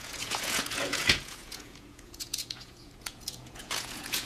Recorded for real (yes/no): no